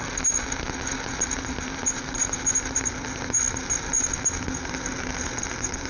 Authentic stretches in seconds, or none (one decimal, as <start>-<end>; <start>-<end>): 0.0-5.9